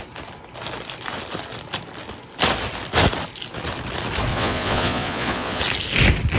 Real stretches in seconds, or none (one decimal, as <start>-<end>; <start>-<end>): 0.0-4.3; 5.6-6.4